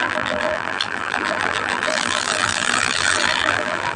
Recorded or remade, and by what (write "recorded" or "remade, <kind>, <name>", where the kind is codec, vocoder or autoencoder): remade, vocoder, BigVGAN v2